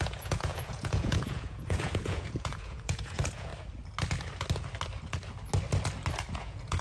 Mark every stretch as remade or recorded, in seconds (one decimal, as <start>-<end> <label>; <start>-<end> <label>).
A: 0.0-3.5 remade; 3.5-6.3 recorded; 6.3-6.8 remade